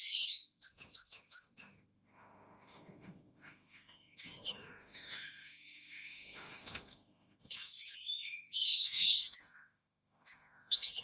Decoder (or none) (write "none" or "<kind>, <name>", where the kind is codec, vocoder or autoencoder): autoencoder, DAC-VAE